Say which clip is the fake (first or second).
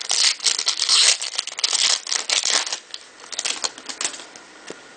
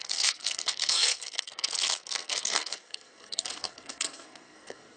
second